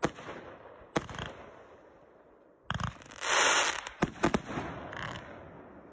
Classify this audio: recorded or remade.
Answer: recorded